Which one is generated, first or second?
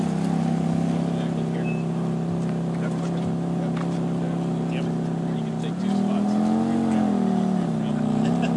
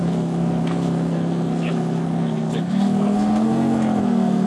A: second